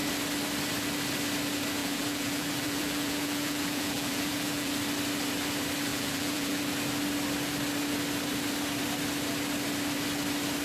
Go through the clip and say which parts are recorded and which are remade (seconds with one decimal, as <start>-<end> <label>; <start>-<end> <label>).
0.0-1.8 recorded; 1.8-4.7 remade; 4.7-5.9 recorded; 5.9-6.6 remade; 6.6-10.6 recorded